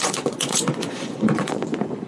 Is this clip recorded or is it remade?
remade